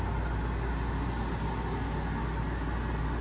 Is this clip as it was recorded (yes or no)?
yes